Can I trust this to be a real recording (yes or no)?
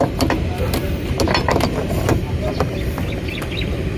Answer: yes